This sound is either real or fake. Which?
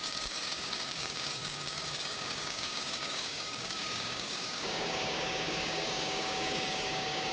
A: fake